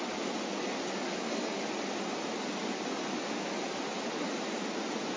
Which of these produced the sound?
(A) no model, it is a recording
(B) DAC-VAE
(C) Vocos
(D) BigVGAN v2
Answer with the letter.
A